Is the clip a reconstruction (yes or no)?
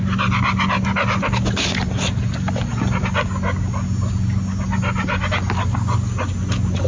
no